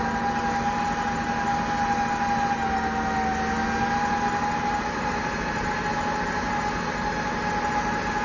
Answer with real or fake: real